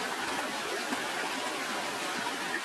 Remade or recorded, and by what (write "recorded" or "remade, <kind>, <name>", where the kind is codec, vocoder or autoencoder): recorded